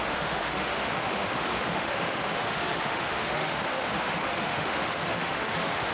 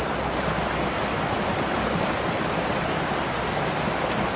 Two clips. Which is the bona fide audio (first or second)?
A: second